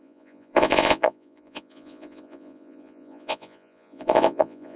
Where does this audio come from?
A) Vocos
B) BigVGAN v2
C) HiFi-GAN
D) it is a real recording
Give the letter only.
A